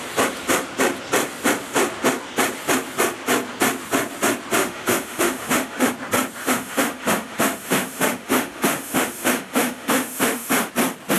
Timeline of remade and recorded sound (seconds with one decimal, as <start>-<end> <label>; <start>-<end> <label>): 0.0-4.6 recorded; 4.6-5.9 remade; 5.9-6.4 recorded; 6.4-10.7 remade; 10.7-11.2 recorded